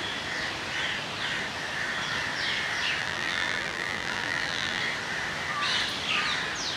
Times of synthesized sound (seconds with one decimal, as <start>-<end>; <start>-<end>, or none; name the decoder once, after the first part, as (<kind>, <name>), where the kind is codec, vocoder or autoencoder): 3.0-4.8 (vocoder, BigVGAN v2)